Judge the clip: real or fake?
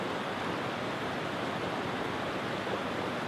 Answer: real